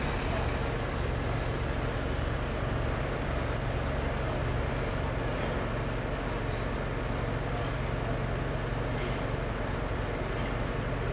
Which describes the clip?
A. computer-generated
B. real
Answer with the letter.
B